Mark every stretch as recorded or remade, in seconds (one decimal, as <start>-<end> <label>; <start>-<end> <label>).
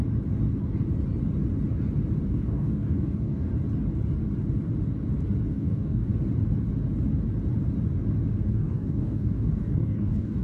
0.0-2.3 recorded; 2.3-3.5 remade; 3.5-5.5 recorded; 5.5-6.1 remade; 6.1-8.5 recorded; 8.5-10.4 remade